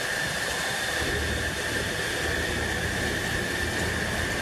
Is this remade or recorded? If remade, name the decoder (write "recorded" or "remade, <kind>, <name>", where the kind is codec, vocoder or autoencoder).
remade, vocoder, BigVGAN v2